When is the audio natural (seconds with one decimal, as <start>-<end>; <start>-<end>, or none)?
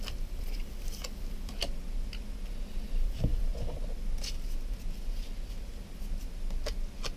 1.6-2.7; 3.5-7.2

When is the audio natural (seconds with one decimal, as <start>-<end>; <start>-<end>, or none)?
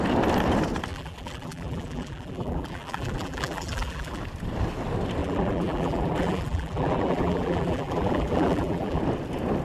0.0-0.9; 4.2-5.2; 9.0-9.6